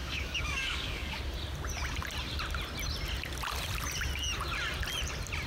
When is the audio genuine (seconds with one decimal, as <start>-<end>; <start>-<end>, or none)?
1.2-5.5